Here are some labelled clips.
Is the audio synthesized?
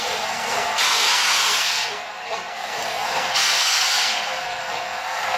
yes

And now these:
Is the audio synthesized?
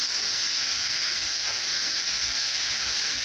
yes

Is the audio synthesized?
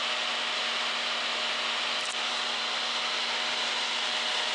no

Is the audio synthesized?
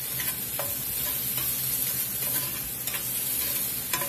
no